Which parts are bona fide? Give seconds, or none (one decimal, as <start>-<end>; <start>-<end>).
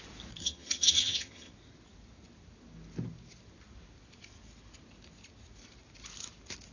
0.0-0.4; 1.5-6.7